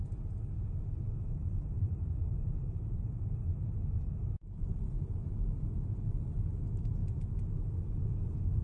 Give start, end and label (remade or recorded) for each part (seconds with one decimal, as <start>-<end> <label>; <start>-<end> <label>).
0.0-1.4 recorded; 1.4-3.3 remade; 3.3-8.6 recorded